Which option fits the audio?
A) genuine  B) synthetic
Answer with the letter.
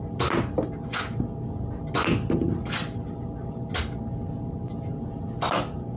A